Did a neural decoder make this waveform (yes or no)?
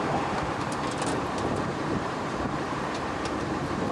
yes